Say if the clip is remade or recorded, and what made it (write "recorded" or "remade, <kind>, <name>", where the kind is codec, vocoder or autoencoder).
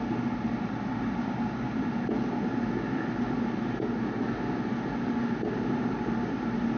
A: recorded